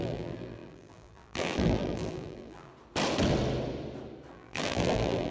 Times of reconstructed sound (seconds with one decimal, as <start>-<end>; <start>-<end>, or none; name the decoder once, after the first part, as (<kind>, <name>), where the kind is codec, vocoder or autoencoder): 0.0-2.7 (vocoder, BigVGAN v2); 4.3-5.3